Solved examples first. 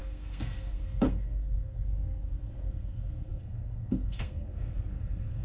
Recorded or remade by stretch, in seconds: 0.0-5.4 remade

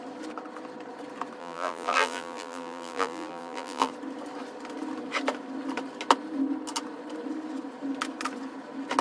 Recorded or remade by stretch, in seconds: 0.0-1.4 recorded; 1.4-3.9 remade; 3.9-9.0 recorded